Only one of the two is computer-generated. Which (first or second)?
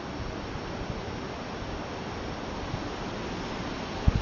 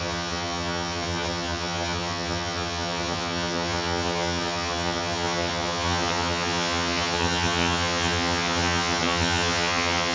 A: second